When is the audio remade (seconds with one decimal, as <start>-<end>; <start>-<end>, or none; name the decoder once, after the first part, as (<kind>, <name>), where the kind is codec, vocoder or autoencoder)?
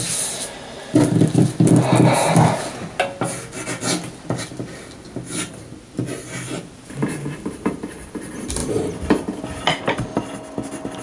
none